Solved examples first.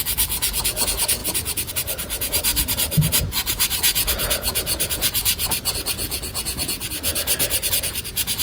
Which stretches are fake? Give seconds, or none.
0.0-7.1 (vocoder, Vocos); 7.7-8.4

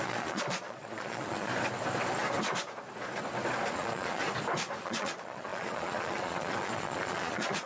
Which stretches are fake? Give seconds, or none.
0.0-1.5 (vocoder, Vocos); 3.7-4.2; 4.8-7.7

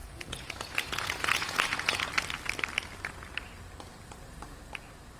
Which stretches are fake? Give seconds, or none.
0.0-2.1 (vocoder, Vocos)

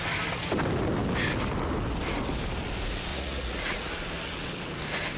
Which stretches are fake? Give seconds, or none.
3.1-3.9 (vocoder, Vocos)

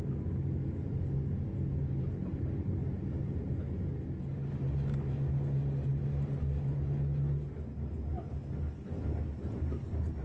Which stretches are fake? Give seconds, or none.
none

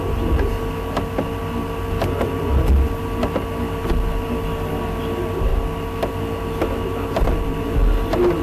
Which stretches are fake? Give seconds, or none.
none

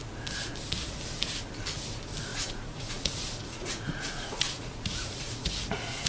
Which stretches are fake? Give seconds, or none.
2.3-6.1 (vocoder, Vocos)

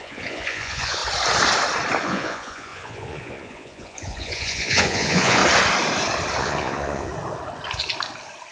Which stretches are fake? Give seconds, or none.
0.0-1.0 (vocoder, Vocos); 2.0-5.4; 6.4-7.1